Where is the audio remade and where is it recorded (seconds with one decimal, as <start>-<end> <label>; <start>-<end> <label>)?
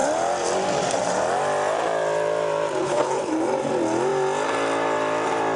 0.0-2.8 recorded; 2.8-3.3 remade; 3.3-5.6 recorded